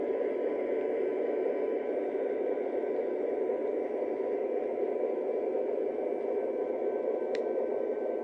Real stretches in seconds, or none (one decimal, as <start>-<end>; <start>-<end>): 0.0-8.2